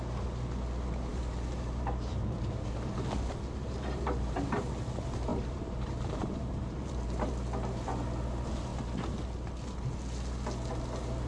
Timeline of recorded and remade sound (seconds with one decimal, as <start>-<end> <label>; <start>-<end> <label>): 0.0-1.1 recorded; 1.1-4.6 remade; 4.6-5.3 recorded; 5.3-7.3 remade; 7.3-11.3 recorded